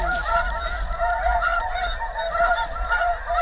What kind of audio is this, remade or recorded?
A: recorded